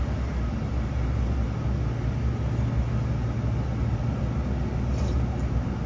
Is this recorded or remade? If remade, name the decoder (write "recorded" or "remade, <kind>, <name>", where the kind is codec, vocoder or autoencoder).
recorded